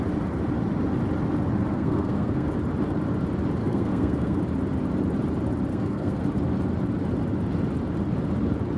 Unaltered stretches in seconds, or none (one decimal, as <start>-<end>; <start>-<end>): 0.0-1.7; 2.5-3.6; 4.4-5.7; 6.2-8.8